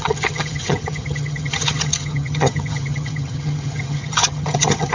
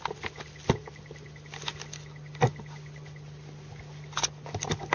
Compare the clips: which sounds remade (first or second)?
first